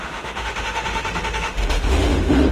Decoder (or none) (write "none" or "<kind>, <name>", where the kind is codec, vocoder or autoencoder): autoencoder, DAC-VAE